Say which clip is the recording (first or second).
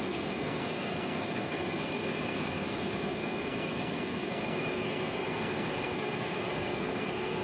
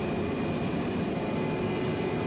second